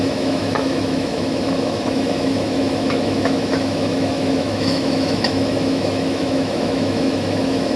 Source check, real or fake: fake